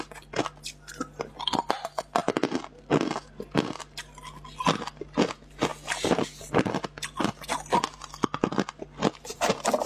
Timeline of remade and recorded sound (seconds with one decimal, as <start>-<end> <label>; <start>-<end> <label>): 0.0-9.9 recorded